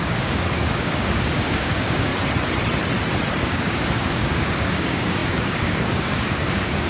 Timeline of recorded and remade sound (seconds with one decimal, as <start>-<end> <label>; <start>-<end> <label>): 0.0-2.1 remade; 2.1-3.4 recorded; 3.4-6.9 remade